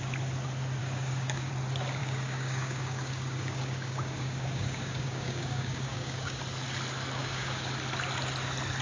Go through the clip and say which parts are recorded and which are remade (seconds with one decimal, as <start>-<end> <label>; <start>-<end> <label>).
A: 0.0-0.8 recorded; 0.8-1.5 remade; 1.5-2.0 recorded; 2.0-6.4 remade; 6.4-7.2 recorded; 7.2-7.7 remade; 7.7-8.8 recorded